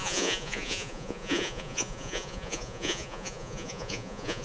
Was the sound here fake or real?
fake